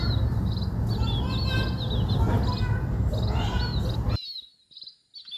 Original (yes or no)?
yes